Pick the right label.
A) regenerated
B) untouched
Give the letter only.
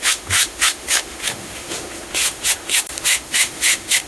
A